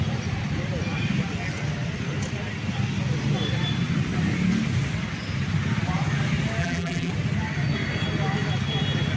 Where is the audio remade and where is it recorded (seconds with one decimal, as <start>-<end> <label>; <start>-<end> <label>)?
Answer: 0.0-6.6 recorded; 6.6-7.1 remade; 7.1-9.2 recorded